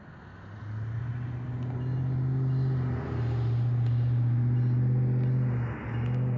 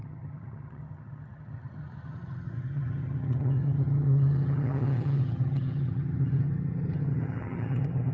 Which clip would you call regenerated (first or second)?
second